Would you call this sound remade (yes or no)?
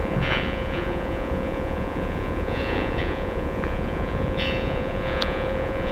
yes